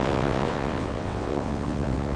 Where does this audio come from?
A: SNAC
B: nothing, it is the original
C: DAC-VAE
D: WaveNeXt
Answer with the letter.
D